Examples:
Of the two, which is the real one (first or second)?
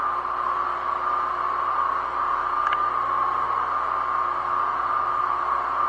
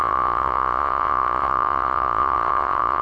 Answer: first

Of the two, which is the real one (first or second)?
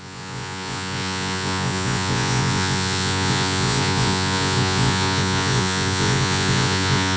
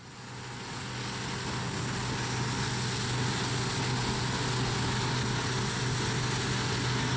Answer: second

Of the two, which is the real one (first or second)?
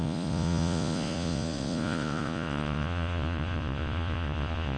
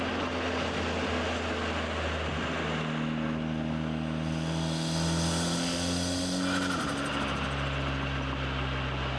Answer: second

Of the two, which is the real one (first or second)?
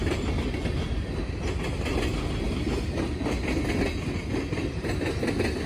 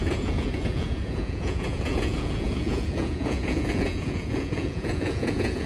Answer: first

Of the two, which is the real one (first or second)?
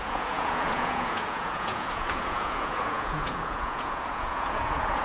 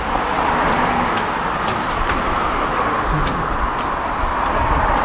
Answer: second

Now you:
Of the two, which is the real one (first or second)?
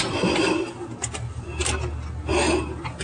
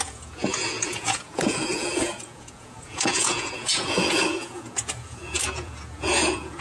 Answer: first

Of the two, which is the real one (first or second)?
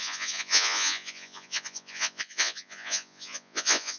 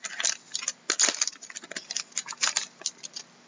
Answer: second